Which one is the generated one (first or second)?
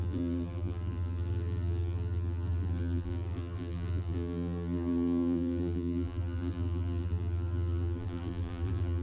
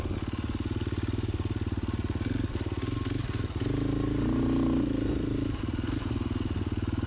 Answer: first